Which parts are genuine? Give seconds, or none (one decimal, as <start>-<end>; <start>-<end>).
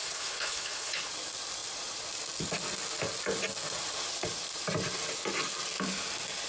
1.1-6.5